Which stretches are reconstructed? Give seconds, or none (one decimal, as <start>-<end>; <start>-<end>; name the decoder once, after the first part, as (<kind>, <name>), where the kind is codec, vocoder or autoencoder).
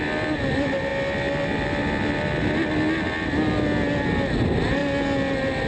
none